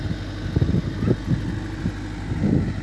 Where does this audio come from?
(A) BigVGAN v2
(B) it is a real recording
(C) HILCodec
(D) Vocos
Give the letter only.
B